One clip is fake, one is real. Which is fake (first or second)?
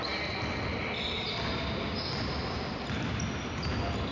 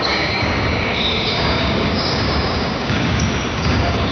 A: second